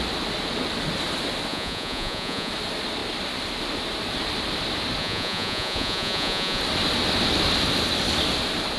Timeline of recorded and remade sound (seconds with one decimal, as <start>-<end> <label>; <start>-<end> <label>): 0.0-1.5 recorded; 1.5-2.5 remade; 2.5-5.0 recorded; 5.0-6.6 remade; 6.6-8.8 recorded